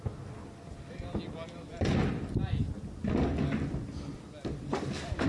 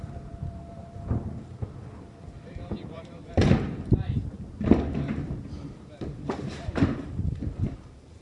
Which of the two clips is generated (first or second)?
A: second